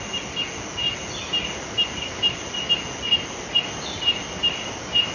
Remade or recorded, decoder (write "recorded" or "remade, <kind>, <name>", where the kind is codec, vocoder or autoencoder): recorded